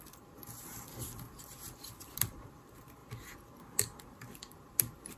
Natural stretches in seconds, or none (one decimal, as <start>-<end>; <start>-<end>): 0.4-1.0; 3.0-3.6